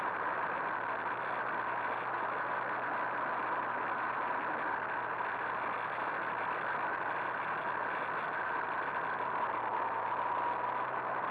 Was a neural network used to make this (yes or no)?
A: no